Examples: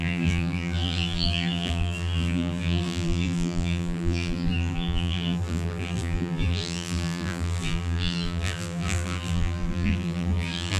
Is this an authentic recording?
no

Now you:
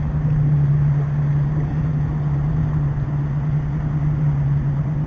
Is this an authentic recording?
yes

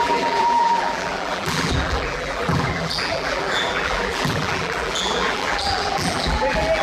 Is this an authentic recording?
no